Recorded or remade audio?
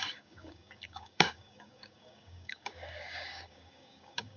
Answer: remade